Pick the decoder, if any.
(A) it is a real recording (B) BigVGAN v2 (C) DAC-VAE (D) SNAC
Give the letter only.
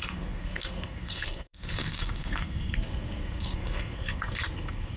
D